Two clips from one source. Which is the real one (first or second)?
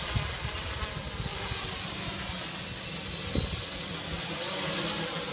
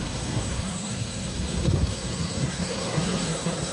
first